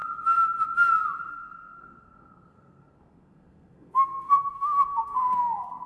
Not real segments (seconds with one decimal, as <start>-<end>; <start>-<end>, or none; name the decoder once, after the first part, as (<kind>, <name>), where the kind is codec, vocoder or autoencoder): 1.3-5.9 (codec, SNAC)

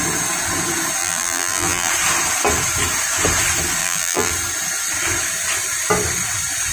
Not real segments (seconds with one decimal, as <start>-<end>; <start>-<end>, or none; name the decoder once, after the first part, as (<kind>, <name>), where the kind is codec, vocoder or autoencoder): 1.0-1.9 (vocoder, BigVGAN v2); 3.8-4.3

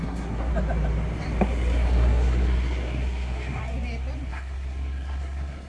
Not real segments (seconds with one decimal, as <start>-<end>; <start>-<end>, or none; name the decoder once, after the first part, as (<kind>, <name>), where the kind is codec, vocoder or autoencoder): 0.0-0.5 (codec, SNAC); 1.4-3.6; 4.3-5.7

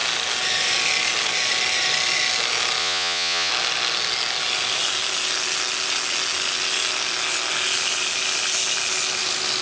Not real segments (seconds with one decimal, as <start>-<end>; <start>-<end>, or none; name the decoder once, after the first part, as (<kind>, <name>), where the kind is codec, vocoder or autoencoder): 2.8-3.5 (vocoder, Vocos)